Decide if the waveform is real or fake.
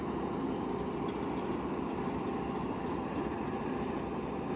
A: real